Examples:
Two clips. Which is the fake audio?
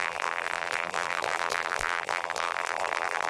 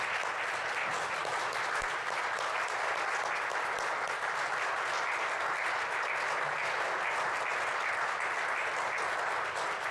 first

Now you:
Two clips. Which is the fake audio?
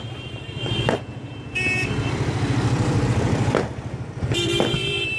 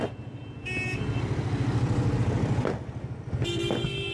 first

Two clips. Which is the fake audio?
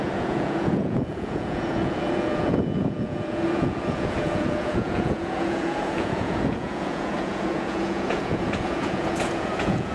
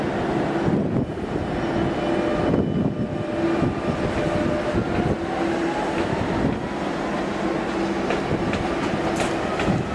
first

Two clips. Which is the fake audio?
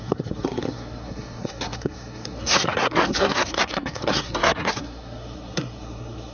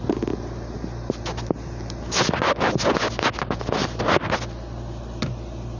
first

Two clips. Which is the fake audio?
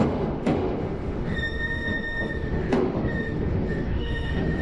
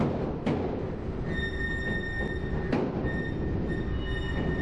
first